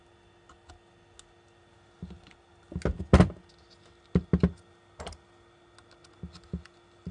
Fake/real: real